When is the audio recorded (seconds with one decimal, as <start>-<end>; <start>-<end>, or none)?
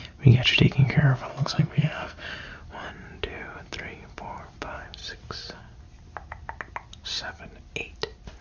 0.0-1.3; 2.3-8.4